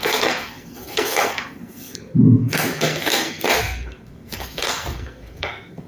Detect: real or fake fake